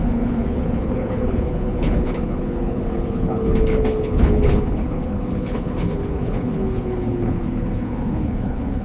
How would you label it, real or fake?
fake